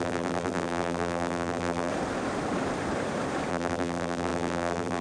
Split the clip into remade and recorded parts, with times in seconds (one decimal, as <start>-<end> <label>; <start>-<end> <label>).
0.0-1.9 remade; 1.9-3.5 recorded; 3.5-5.0 remade